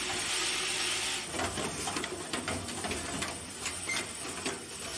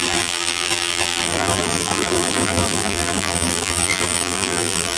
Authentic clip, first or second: first